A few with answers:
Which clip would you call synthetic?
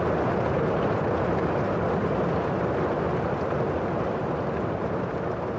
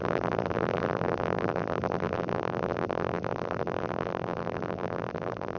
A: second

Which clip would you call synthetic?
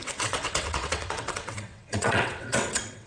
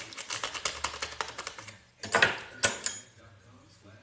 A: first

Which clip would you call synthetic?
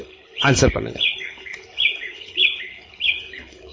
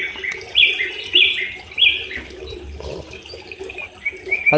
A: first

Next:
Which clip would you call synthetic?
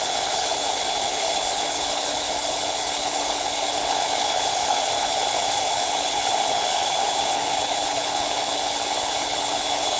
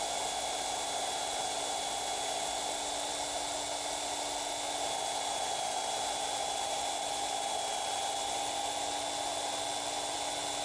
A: first